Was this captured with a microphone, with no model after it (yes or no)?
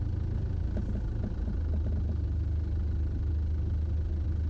yes